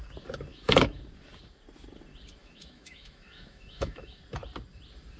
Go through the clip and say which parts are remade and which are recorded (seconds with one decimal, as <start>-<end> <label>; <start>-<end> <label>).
0.0-0.5 recorded; 0.5-1.0 remade; 1.0-2.4 recorded; 2.4-4.2 remade; 4.2-5.2 recorded